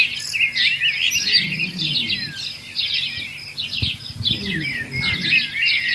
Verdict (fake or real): real